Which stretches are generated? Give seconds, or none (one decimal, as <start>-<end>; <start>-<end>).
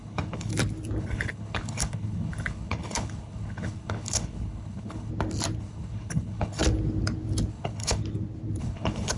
0.0-0.5; 1.0-5.1; 5.6-6.6; 7.5-8.0; 8.6-9.2